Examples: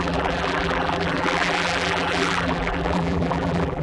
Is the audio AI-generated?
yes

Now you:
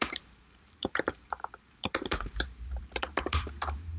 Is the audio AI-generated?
yes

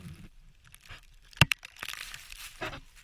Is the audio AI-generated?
yes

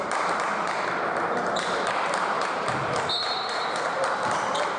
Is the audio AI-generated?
yes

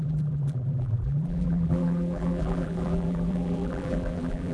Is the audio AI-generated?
yes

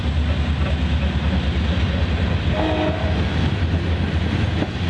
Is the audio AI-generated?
no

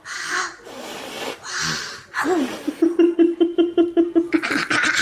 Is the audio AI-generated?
no